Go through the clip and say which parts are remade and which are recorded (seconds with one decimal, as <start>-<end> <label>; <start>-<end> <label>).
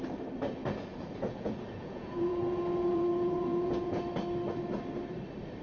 0.0-0.6 recorded; 0.6-4.0 remade; 4.0-5.6 recorded